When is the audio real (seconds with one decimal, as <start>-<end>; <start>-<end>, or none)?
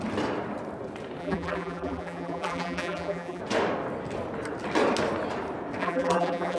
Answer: 0.0-1.2; 3.4-5.8